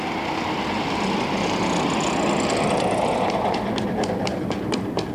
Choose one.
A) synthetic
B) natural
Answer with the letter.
B